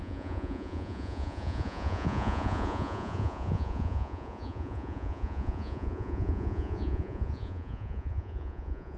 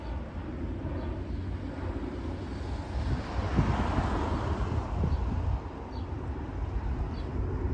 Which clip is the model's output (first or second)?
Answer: first